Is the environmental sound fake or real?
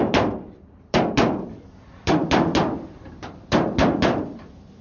fake